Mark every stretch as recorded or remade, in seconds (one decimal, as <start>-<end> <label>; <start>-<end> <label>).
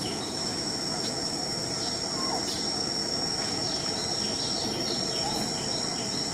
0.0-1.6 remade; 1.6-2.7 recorded; 2.7-4.0 remade; 4.0-6.3 recorded